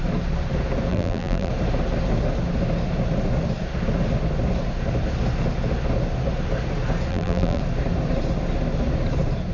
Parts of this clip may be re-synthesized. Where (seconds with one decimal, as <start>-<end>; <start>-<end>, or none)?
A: 0.9-1.5; 7.1-7.6